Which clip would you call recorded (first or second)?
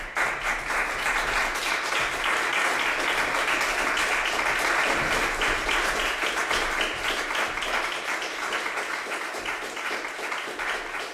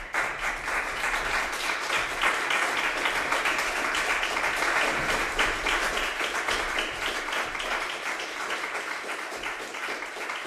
first